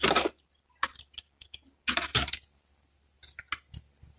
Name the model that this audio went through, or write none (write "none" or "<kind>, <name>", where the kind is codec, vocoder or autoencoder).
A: none